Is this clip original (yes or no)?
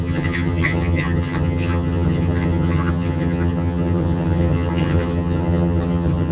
no